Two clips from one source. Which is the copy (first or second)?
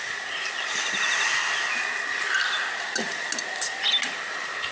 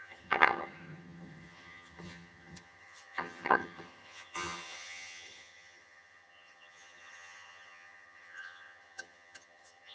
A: second